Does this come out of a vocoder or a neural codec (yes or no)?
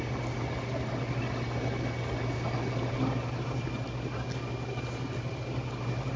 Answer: no